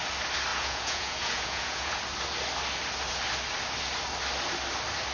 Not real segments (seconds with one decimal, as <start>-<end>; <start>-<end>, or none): 0.5-2.0

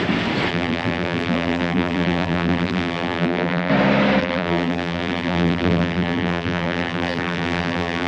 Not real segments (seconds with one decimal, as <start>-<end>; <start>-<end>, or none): 0.5-3.7; 4.2-8.1

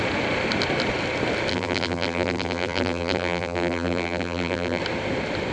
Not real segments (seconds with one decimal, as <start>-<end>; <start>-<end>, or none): 1.5-4.8

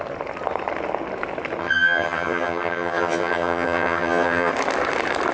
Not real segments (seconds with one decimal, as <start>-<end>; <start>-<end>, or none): 1.6-4.5